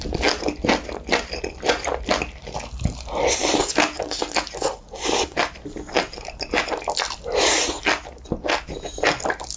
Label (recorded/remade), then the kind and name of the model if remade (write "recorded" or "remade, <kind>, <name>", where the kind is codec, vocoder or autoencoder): recorded